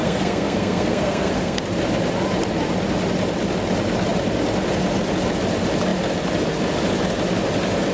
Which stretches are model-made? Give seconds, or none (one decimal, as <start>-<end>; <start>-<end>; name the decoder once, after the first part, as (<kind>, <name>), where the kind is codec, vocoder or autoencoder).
0.0-1.6 (codec, SNAC)